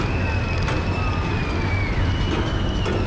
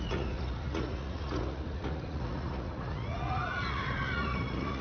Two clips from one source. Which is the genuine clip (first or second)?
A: first